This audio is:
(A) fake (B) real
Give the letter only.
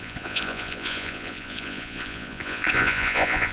A